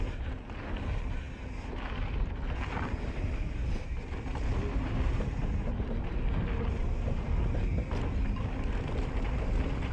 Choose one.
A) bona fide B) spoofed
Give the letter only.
A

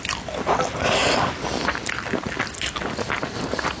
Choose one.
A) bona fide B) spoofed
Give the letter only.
A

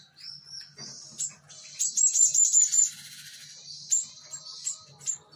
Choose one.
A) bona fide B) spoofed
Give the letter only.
A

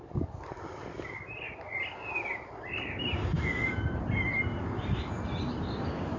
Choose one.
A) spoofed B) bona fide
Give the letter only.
B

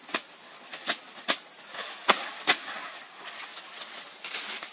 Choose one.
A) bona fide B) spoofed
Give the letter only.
A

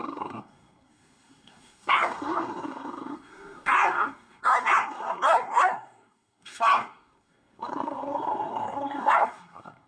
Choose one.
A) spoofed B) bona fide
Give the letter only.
A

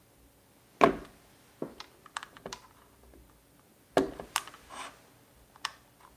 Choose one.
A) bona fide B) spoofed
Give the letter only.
A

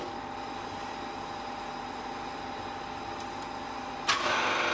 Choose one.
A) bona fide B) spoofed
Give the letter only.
A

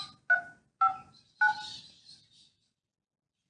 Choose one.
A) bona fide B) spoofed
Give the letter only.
A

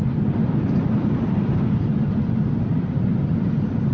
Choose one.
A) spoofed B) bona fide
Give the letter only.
B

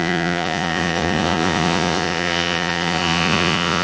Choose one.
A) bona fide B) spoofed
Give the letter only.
B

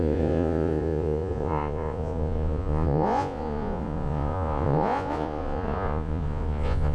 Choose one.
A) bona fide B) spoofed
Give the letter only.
B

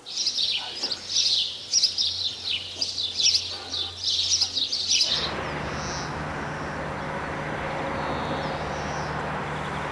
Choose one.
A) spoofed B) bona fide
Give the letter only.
B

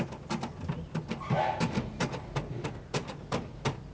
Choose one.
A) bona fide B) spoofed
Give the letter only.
A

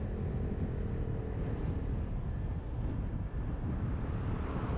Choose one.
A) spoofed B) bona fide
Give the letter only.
B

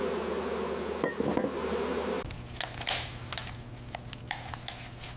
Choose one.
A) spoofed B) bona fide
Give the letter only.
B